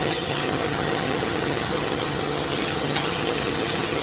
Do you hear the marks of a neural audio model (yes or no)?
yes